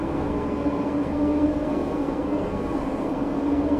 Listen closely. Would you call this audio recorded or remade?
remade